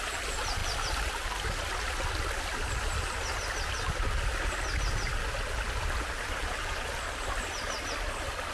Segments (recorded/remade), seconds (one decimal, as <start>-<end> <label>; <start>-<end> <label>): 0.0-8.5 recorded